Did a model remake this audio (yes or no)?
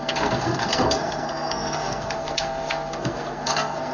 yes